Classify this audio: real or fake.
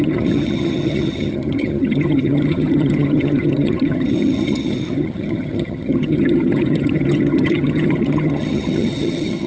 fake